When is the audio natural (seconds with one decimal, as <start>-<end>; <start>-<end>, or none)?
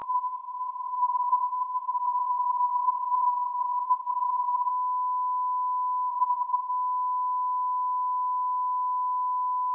4.7-6.1; 6.7-9.7